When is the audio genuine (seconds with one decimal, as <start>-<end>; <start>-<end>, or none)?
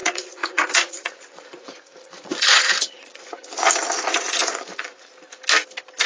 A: 3.7-4.4; 5.1-6.1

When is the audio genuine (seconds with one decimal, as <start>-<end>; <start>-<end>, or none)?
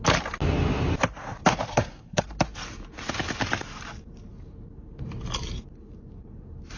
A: 0.0-1.7; 2.2-6.8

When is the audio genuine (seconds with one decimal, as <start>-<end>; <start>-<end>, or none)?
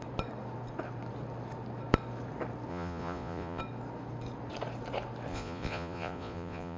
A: 0.0-2.7; 3.6-5.3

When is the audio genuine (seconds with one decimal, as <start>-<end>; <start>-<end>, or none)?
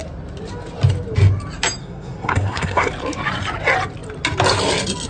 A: 0.0-1.8; 2.9-5.1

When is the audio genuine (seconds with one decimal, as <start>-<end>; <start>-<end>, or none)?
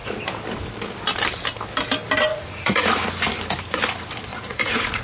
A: 0.0-2.3; 2.9-4.3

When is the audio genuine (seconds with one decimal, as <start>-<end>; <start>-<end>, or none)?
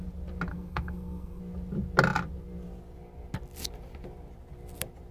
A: 0.0-0.5; 1.4-5.1